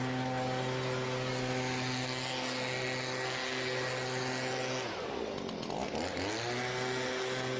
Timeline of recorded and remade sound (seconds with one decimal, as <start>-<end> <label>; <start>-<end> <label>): 0.0-7.6 recorded